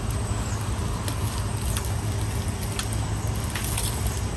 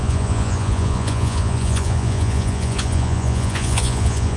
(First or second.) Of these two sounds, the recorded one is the first